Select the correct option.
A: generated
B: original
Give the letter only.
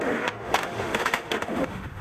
A